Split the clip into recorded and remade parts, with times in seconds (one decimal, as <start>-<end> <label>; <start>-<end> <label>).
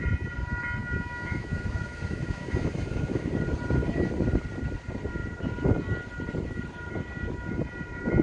0.0-0.8 recorded; 0.8-3.3 remade; 3.3-8.2 recorded